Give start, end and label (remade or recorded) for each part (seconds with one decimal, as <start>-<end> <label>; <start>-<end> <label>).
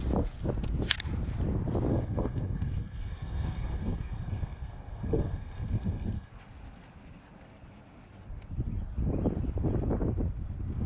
0.0-1.9 recorded; 1.9-6.3 remade; 6.3-10.9 recorded